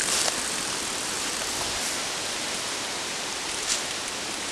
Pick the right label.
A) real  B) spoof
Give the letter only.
B